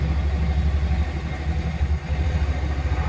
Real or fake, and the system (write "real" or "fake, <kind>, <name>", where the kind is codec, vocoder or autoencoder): real